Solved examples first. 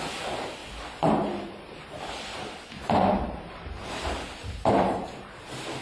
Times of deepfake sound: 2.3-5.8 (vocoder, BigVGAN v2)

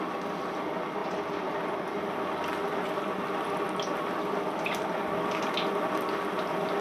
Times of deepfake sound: none

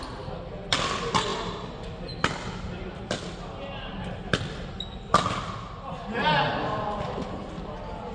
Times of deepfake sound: none

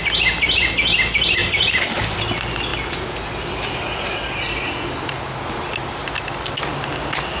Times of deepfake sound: 1.4-2.2 (vocoder, BigVGAN v2)

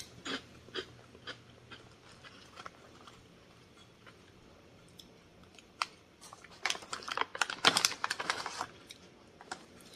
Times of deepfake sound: 0.0-0.9 (vocoder, BigVGAN v2); 2.4-7.3; 9.6-10.0

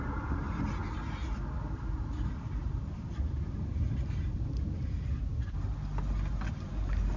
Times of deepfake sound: 1.2-5.5 (vocoder, BigVGAN v2)

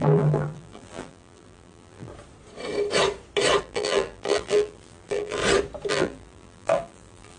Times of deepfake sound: 0.0-2.1 (vocoder, BigVGAN v2); 3.6-5.4; 5.9-7.4